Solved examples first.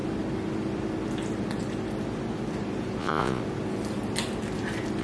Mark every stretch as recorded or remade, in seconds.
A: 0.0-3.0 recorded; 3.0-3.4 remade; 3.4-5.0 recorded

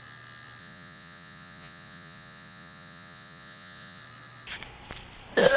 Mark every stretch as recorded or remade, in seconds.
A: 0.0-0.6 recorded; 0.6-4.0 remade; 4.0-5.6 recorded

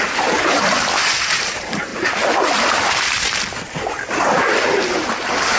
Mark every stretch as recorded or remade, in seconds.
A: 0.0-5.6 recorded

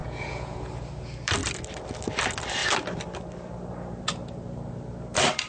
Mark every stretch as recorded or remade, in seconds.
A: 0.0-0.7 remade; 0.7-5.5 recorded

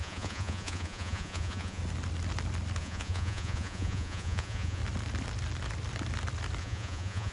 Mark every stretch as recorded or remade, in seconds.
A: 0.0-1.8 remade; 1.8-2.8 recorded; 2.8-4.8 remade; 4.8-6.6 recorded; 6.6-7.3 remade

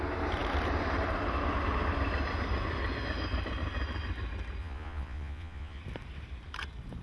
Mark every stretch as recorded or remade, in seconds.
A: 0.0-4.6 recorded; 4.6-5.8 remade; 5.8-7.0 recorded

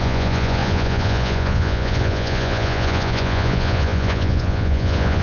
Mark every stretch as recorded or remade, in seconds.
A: 0.0-5.2 remade

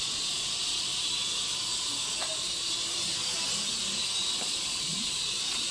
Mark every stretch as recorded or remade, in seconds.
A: 0.0-0.9 remade; 0.9-4.3 recorded; 4.3-5.7 remade